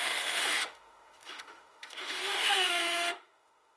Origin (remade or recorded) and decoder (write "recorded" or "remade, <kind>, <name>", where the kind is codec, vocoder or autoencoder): remade, autoencoder, DAC-VAE